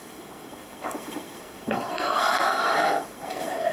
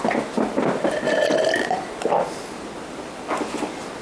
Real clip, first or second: second